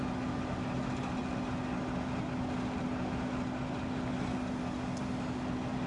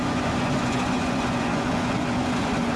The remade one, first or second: second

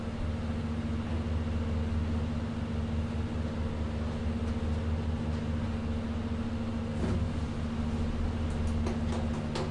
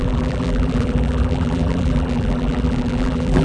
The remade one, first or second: second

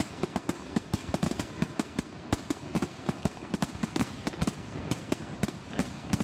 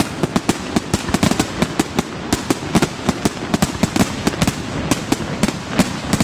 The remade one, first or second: first